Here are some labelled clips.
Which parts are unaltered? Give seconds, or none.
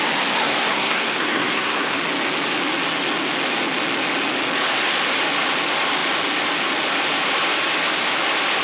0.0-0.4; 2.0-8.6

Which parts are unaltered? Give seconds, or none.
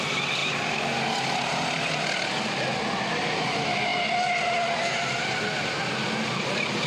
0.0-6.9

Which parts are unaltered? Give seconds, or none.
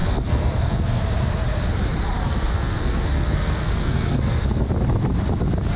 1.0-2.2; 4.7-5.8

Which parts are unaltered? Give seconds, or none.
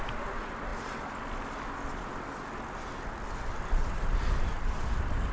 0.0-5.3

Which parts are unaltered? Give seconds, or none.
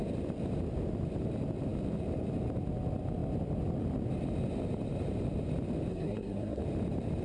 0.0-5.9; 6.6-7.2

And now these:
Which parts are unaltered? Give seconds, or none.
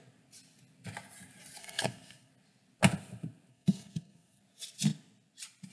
0.0-1.6; 2.3-3.5; 4.4-5.7